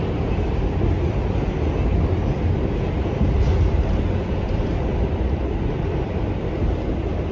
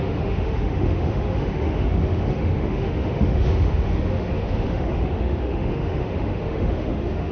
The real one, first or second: first